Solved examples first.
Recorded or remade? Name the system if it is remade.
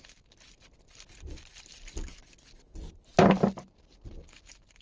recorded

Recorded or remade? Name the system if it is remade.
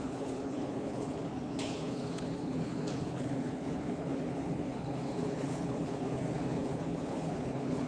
remade, codec, HILCodec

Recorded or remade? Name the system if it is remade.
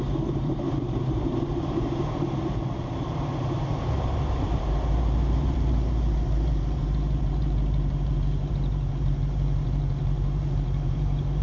remade, vocoder, BigVGAN v2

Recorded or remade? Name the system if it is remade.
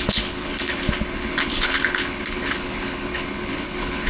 remade, codec, HILCodec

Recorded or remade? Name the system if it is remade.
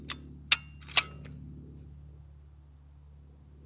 recorded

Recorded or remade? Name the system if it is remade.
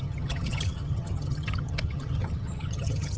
remade, vocoder, HiFi-GAN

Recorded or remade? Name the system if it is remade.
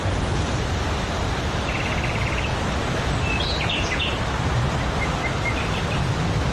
recorded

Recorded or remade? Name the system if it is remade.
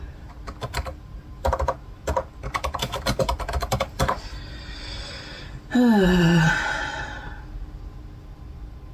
recorded